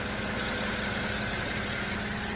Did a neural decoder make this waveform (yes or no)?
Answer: no